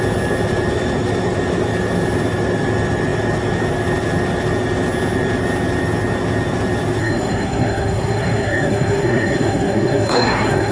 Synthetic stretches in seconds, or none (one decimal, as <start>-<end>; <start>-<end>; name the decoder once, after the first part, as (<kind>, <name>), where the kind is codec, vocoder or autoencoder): 7.0-10.7 (codec, SNAC)